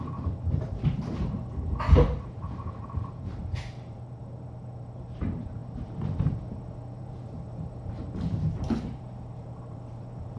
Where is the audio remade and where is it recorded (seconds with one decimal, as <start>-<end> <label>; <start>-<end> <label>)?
0.0-5.6 remade; 5.6-7.0 recorded; 7.0-10.4 remade